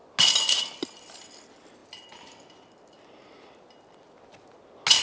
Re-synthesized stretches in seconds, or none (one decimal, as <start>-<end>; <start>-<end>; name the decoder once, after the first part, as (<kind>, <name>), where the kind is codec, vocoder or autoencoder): none